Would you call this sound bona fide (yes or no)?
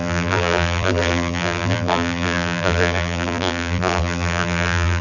no